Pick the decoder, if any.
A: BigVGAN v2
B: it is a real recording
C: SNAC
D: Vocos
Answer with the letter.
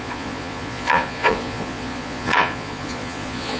D